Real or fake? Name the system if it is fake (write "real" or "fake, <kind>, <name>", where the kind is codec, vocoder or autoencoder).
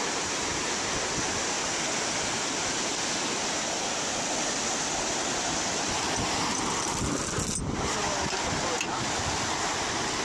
real